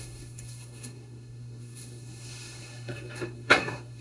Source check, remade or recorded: remade